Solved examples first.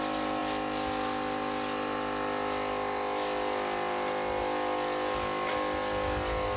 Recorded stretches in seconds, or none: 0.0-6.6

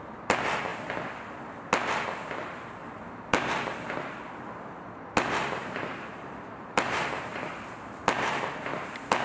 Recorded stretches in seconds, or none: 0.0-2.8; 3.5-5.6; 7.5-9.2

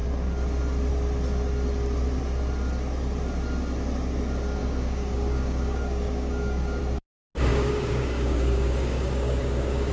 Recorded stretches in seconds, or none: 0.0-4.6; 6.8-7.5

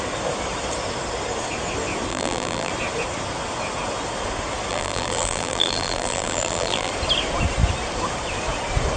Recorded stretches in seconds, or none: 0.0-2.1; 2.7-4.7; 6.9-9.0

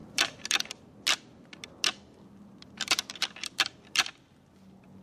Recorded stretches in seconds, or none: 0.0-5.0

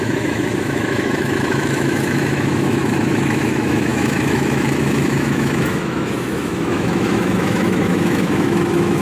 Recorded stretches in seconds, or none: none